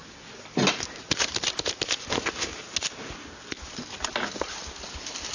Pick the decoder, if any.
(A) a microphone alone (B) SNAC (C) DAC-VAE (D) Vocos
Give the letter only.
A